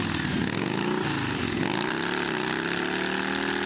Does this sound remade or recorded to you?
recorded